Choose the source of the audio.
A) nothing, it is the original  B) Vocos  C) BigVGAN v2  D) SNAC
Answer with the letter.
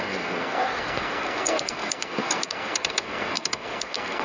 D